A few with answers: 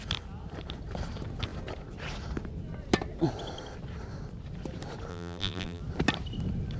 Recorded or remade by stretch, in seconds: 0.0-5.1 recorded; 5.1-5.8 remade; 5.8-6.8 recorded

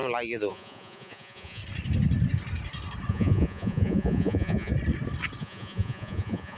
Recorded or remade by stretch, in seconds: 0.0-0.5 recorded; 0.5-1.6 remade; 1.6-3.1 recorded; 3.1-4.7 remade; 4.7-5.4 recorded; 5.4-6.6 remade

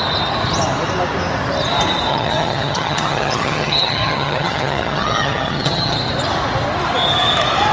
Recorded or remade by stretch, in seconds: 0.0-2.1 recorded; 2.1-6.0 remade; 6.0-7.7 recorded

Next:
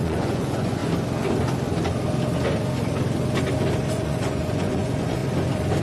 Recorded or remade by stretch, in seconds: 0.0-0.8 remade; 0.8-3.9 recorded; 3.9-5.2 remade; 5.2-5.8 recorded

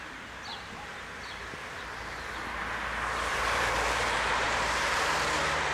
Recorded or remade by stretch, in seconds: 0.0-3.3 recorded; 3.3-5.1 remade; 5.1-5.7 recorded

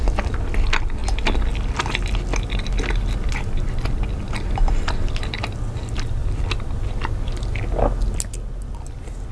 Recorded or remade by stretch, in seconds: 0.0-9.3 recorded

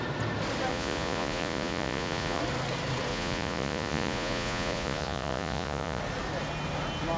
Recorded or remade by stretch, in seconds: 0.0-0.7 recorded; 0.7-2.4 remade; 2.4-3.1 recorded; 3.1-6.0 remade; 6.0-7.2 recorded